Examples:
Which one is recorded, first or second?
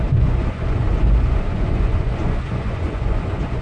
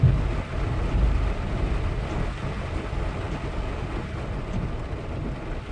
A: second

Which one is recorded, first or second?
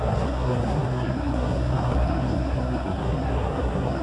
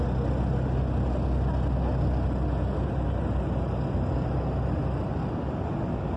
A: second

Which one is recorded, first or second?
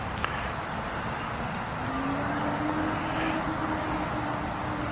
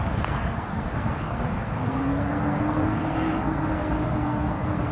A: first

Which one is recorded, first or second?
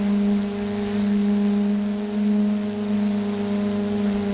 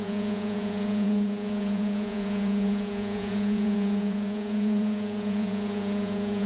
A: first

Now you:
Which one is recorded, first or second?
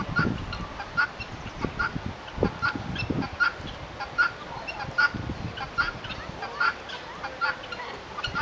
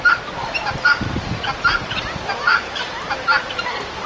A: first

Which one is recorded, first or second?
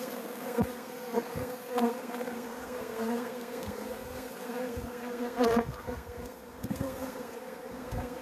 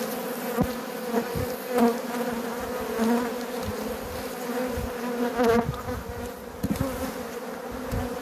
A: second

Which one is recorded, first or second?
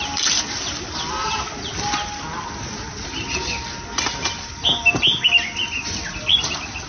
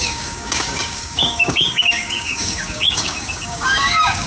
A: first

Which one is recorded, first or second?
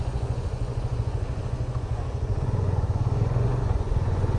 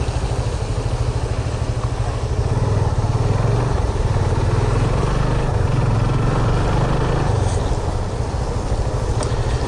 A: second